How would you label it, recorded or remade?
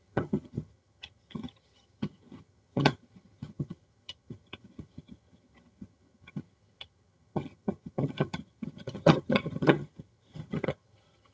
remade